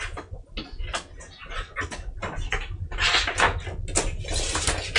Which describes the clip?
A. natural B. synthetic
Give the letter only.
A